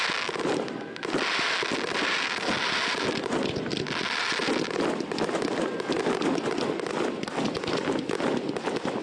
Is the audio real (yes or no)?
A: yes